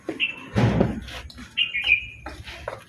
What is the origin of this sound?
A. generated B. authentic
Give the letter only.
B